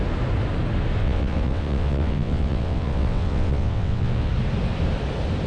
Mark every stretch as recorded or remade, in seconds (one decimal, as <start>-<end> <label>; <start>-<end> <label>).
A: 0.0-1.0 recorded; 1.0-4.3 remade; 4.3-5.5 recorded